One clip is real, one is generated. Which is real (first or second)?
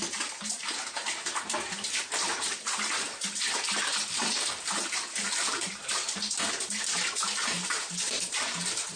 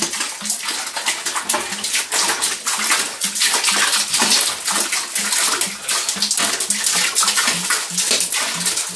second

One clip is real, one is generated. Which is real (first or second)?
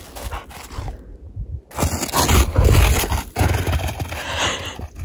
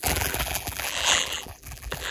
first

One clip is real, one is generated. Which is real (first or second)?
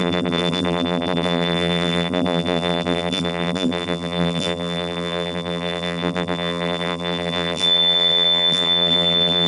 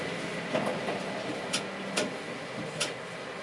second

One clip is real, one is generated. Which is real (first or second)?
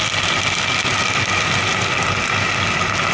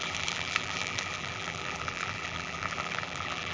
first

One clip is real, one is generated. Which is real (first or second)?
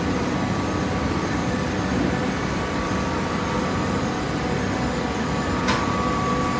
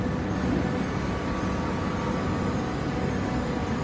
second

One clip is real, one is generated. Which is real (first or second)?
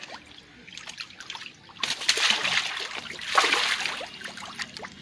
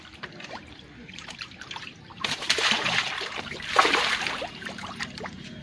first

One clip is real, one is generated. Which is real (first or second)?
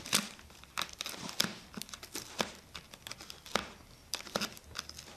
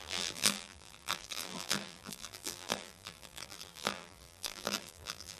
first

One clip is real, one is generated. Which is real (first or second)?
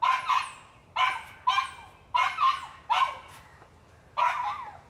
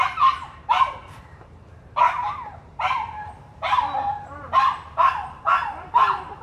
first